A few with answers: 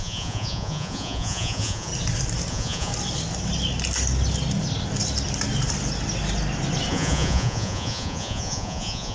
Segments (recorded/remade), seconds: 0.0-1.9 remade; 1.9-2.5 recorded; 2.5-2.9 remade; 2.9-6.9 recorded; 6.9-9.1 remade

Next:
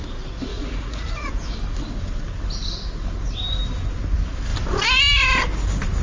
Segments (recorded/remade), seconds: 0.0-0.5 recorded; 0.5-1.3 remade; 1.3-6.0 recorded

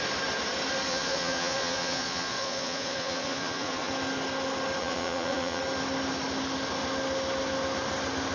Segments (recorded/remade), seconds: 0.0-0.9 recorded; 0.9-3.9 remade; 3.9-4.8 recorded; 4.8-5.6 remade; 5.6-8.3 recorded

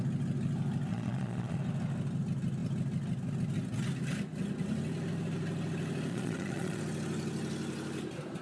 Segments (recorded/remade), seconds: 0.0-0.9 recorded; 0.9-1.6 remade; 1.6-6.1 recorded; 6.1-6.8 remade; 6.8-8.4 recorded

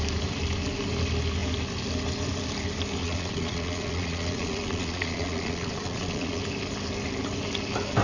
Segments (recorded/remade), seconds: 0.0-3.0 recorded; 3.0-6.4 remade; 6.4-8.0 recorded

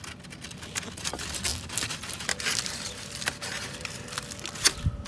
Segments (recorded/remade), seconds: 0.0-5.1 recorded